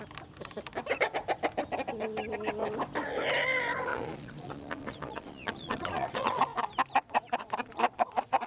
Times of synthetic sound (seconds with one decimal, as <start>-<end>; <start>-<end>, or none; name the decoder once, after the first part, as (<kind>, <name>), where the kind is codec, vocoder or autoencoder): 3.9-6.4 (vocoder, Vocos); 7.0-8.5